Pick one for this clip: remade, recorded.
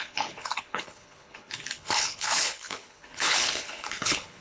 remade